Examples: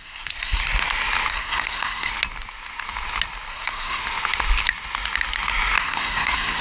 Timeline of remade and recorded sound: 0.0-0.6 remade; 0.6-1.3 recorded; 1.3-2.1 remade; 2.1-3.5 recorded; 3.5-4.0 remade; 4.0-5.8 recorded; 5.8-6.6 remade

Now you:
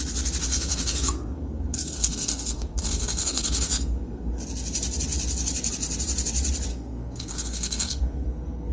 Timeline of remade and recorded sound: 0.0-0.5 recorded; 0.5-4.3 remade; 4.3-6.7 recorded; 6.7-8.7 remade